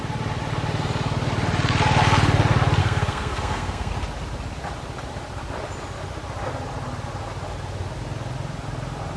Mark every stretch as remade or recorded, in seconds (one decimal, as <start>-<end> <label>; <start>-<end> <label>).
0.0-2.8 recorded; 2.8-3.9 remade; 3.9-9.2 recorded